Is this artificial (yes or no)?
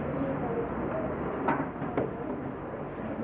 no